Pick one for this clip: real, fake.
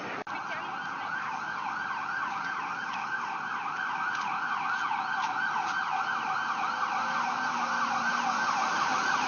real